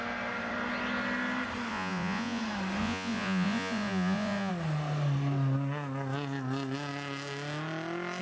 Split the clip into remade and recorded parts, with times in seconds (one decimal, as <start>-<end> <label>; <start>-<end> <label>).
0.0-1.7 recorded; 1.7-2.4 remade; 2.4-2.8 recorded; 2.8-4.5 remade; 4.5-8.2 recorded